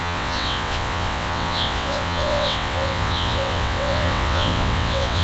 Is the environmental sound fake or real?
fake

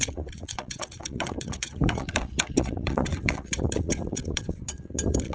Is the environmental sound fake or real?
fake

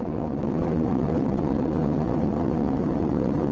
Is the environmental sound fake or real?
fake